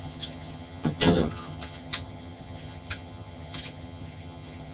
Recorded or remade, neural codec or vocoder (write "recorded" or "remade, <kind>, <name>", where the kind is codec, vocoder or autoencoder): remade, vocoder, HiFi-GAN